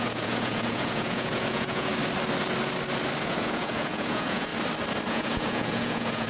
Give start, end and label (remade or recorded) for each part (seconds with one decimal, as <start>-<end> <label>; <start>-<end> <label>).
0.0-1.9 remade; 1.9-3.2 recorded; 3.2-4.5 remade; 4.5-5.1 recorded; 5.1-6.3 remade